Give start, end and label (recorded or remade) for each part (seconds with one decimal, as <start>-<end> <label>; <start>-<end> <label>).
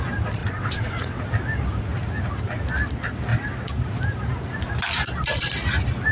0.0-0.4 recorded; 0.4-1.2 remade; 1.2-6.1 recorded